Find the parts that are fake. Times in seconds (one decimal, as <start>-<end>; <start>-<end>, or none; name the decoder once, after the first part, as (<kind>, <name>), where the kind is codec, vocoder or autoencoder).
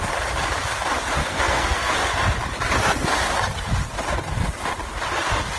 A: 1.2-1.9 (codec, SNAC)